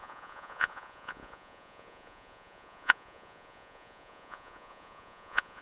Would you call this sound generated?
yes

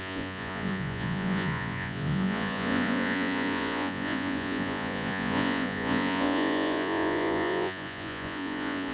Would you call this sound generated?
yes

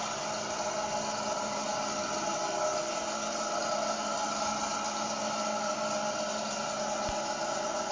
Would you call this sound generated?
no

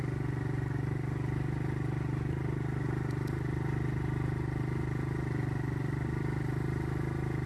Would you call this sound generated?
no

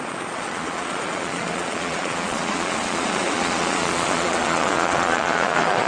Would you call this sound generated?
yes